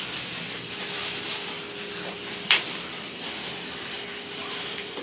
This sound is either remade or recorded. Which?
recorded